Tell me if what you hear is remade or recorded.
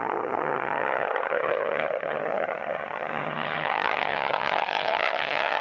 remade